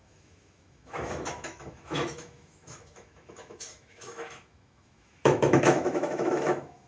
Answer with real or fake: fake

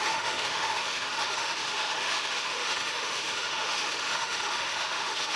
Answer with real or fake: fake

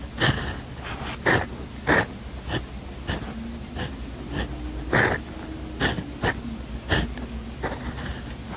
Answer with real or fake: real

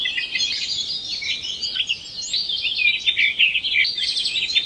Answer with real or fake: real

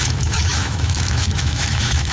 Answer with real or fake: fake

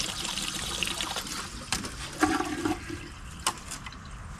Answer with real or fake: real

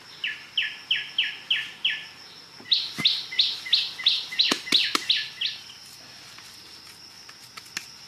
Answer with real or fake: real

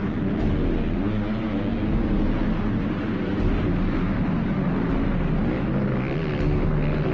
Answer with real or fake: real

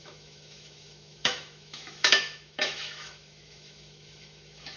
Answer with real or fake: fake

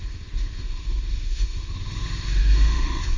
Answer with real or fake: fake